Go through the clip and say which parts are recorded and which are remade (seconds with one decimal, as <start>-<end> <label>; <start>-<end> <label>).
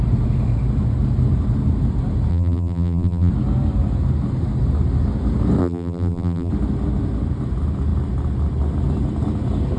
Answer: 0.0-2.3 recorded; 2.3-3.3 remade; 3.3-5.6 recorded; 5.6-6.5 remade; 6.5-9.8 recorded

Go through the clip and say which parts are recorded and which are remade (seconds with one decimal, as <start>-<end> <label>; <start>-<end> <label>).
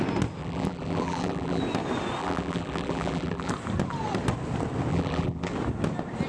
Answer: 0.0-0.4 recorded; 0.4-1.6 remade; 1.6-2.2 recorded; 2.2-3.5 remade; 3.5-4.9 recorded; 4.9-5.5 remade; 5.5-6.3 recorded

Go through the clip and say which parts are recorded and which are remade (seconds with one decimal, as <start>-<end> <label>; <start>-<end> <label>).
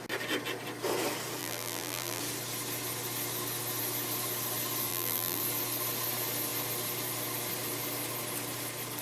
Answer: 0.0-1.4 recorded; 1.4-2.2 remade; 2.2-4.9 recorded; 4.9-5.4 remade; 5.4-9.0 recorded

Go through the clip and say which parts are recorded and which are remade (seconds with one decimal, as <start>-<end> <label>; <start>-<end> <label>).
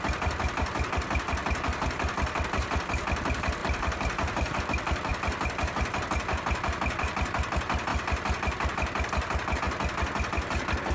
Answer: 0.0-3.6 recorded; 3.6-4.6 remade; 4.6-10.9 recorded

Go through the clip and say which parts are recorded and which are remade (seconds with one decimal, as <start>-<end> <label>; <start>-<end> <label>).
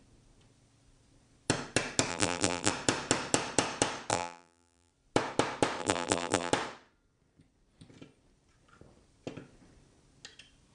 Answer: 0.0-2.1 recorded; 2.1-2.7 remade; 2.7-4.1 recorded; 4.1-4.9 remade; 4.9-5.8 recorded; 5.8-6.5 remade; 6.5-10.7 recorded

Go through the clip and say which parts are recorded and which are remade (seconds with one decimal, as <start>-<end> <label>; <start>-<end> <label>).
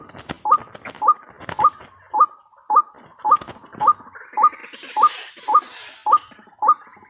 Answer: 0.0-7.1 recorded